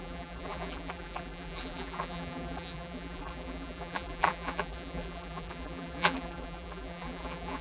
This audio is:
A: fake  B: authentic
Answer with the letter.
A